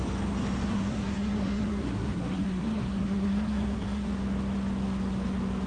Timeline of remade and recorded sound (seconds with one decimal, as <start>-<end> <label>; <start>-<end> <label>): 0.0-0.7 recorded; 0.7-4.1 remade; 4.1-5.7 recorded